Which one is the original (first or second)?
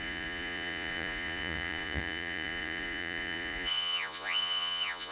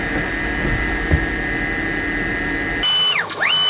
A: second